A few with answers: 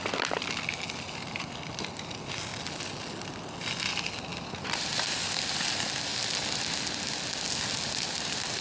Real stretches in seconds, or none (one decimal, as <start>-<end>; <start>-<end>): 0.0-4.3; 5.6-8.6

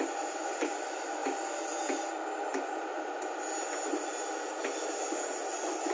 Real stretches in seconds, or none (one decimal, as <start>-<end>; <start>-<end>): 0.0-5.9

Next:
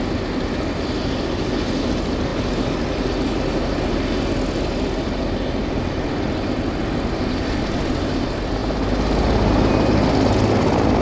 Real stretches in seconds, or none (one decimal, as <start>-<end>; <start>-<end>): 0.0-11.0

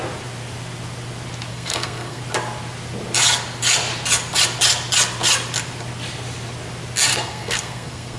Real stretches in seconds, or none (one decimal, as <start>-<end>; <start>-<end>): 0.0-1.5; 2.2-7.1

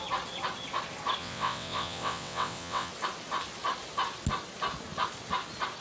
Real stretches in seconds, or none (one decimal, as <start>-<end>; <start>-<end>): 0.0-1.2; 2.9-5.8

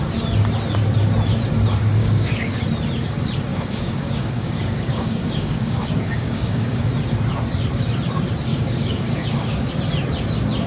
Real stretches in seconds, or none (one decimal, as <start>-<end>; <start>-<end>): 0.0-2.0; 2.6-3.5; 6.9-8.5; 9.7-10.7